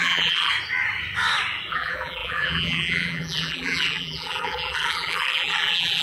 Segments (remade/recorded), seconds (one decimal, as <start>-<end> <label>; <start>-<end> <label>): 0.0-0.5 remade; 0.5-1.7 recorded; 1.7-6.0 remade